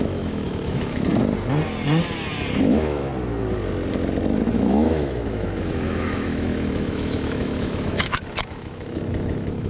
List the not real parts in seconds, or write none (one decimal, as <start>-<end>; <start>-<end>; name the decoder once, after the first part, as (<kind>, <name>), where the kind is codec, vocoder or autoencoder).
0.0-1.1 (autoencoder, DAC-VAE); 2.6-3.1; 4.5-9.7